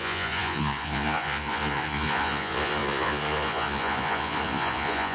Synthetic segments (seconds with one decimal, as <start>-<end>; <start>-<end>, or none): 0.0-5.1